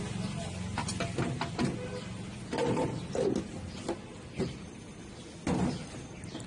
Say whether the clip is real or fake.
real